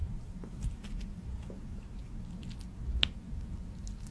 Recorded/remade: recorded